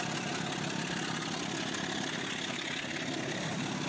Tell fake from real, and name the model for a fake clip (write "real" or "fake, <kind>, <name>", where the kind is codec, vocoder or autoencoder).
real